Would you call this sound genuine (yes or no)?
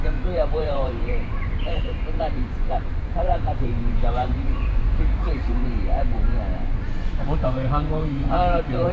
no